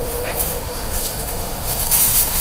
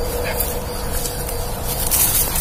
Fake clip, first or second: first